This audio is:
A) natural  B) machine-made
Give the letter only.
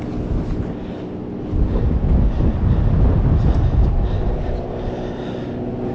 A